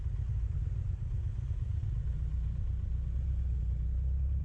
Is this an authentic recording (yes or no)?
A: yes